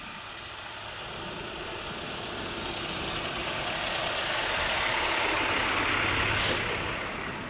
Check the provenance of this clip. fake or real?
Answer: real